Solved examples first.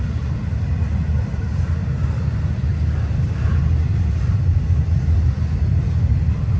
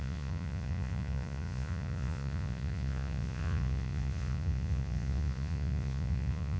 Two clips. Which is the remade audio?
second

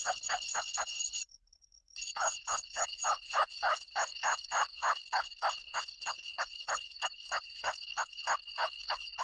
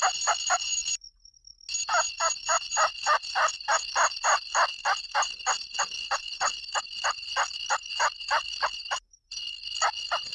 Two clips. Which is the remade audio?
first